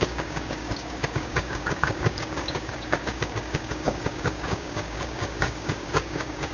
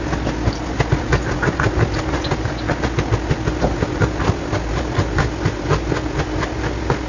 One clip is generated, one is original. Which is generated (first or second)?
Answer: first